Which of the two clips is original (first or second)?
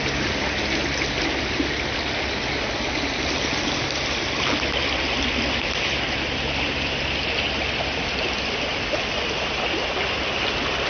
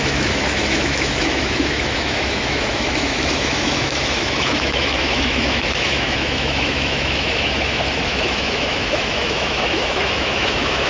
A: first